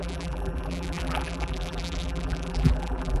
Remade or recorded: remade